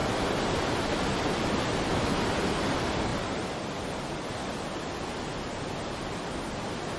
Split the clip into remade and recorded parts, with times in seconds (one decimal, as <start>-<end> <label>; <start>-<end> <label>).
0.0-3.1 recorded; 3.1-6.6 remade; 6.6-7.0 recorded